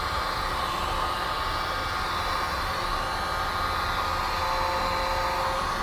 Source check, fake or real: real